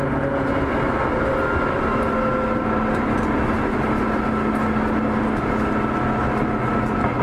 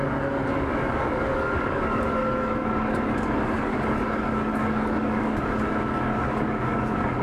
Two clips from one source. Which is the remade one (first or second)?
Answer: second